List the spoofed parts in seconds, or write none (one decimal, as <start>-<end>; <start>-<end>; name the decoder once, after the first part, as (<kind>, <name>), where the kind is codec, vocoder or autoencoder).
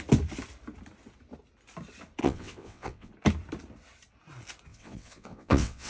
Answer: 2.2-3.1 (vocoder, WaveNeXt); 4.7-5.9